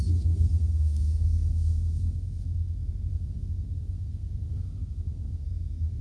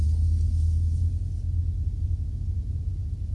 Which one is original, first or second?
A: second